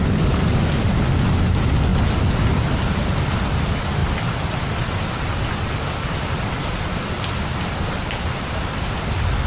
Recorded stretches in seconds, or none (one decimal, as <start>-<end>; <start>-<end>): 0.0-9.5